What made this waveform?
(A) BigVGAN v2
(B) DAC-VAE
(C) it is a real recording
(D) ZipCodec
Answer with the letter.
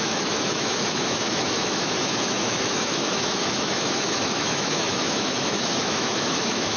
B